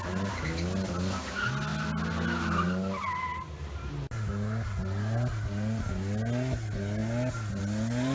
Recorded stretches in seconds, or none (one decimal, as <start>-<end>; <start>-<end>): 0.0-8.1